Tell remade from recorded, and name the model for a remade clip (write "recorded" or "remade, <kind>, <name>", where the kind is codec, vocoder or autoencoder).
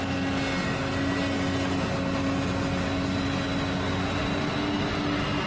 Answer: recorded